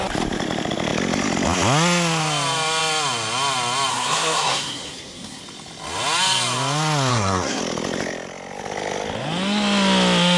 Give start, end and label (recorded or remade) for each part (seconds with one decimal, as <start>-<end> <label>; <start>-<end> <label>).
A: 0.0-3.9 recorded; 3.9-5.4 remade; 5.4-7.1 recorded; 7.1-7.6 remade; 7.6-10.4 recorded